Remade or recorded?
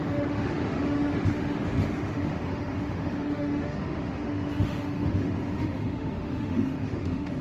remade